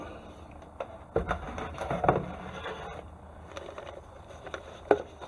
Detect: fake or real real